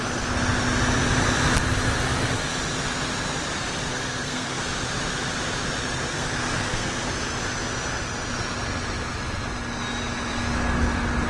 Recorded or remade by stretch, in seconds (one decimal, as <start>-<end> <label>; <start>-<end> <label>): 0.0-3.9 recorded; 3.9-4.6 remade; 4.6-6.1 recorded; 6.1-7.1 remade; 7.1-11.3 recorded